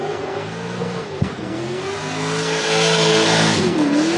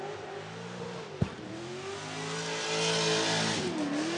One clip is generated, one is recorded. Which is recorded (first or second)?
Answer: second